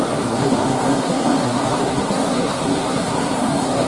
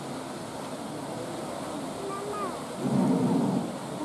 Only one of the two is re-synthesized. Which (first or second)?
first